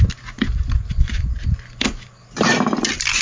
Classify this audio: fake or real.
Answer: real